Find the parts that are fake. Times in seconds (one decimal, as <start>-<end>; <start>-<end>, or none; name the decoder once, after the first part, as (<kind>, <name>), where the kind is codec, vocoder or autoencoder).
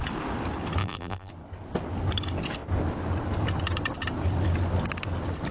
0.8-1.3 (vocoder, BigVGAN v2)